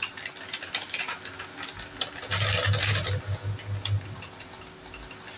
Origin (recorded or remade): recorded